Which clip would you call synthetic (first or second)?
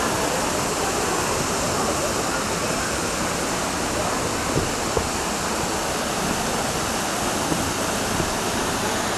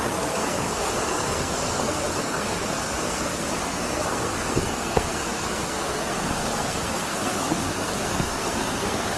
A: second